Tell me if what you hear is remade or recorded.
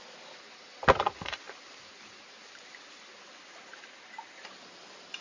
recorded